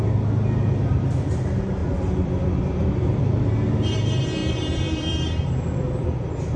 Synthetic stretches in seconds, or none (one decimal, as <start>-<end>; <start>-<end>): 1.8-3.2; 4.4-6.6